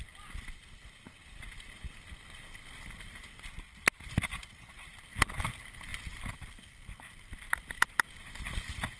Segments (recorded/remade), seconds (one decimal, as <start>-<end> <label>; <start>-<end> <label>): 0.0-9.0 recorded